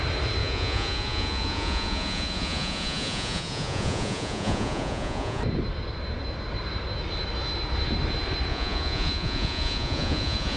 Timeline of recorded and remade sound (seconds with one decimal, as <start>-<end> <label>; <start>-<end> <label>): 0.0-0.4 recorded; 0.4-5.4 remade; 5.4-8.5 recorded; 8.5-10.6 remade